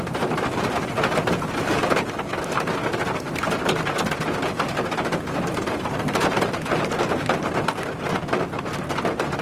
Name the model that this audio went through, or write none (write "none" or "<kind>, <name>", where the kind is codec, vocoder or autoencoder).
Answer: vocoder, BigVGAN v2